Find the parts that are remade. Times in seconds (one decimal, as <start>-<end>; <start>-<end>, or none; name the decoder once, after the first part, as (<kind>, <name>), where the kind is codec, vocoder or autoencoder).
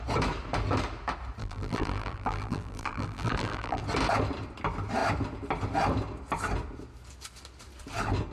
1.4-3.8 (vocoder, BigVGAN v2)